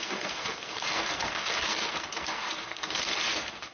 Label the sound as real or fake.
fake